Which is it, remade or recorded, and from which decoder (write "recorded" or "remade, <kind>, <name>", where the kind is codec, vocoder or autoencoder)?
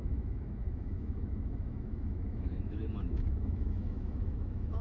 remade, autoencoder, DAC-VAE